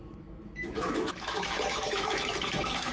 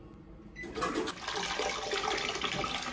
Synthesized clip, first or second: first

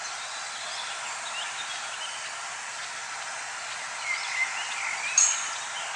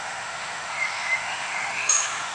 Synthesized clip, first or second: second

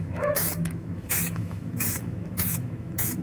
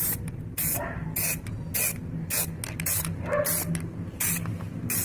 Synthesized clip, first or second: first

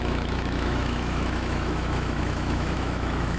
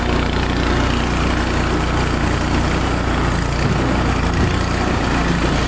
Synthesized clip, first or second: first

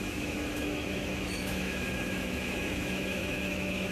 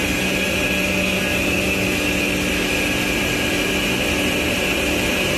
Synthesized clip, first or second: first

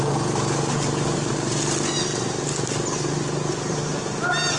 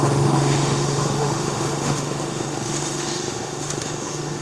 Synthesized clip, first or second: second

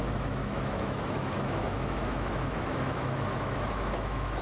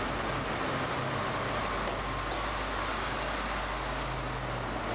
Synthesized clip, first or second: first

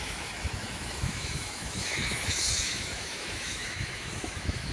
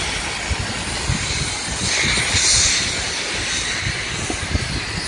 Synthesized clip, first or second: first